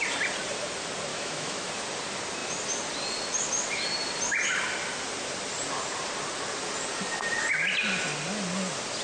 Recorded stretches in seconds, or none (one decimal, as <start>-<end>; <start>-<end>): 0.0-1.1; 1.7-9.0